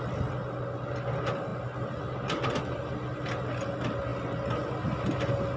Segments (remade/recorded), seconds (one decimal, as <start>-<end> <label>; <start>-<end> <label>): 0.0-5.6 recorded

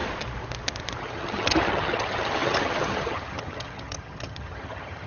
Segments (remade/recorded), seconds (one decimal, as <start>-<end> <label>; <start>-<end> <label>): 0.0-1.0 recorded; 1.0-5.1 remade

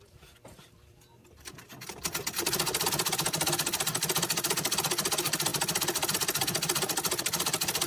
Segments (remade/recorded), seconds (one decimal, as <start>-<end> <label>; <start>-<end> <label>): 0.0-7.9 remade

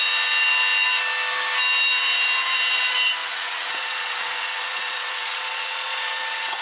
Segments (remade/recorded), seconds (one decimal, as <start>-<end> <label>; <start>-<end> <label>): 0.0-3.2 recorded; 3.2-6.6 remade

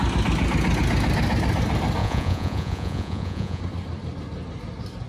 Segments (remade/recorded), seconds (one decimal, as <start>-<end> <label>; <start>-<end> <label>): 0.0-2.0 recorded; 2.0-3.6 remade; 3.6-5.1 recorded